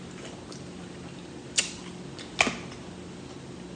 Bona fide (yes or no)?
yes